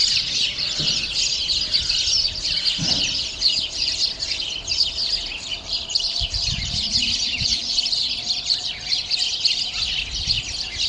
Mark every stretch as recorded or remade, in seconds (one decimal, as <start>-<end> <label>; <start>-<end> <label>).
0.0-5.5 recorded; 5.5-8.2 remade; 8.2-10.9 recorded